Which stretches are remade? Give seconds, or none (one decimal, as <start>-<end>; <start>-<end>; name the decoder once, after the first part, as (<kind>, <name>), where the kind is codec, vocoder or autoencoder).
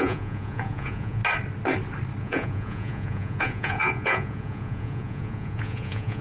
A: 0.0-1.2 (vocoder, Vocos); 2.2-6.2